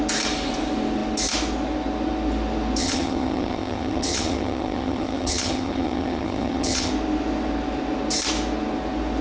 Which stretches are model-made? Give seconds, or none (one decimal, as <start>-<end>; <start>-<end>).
2.8-6.9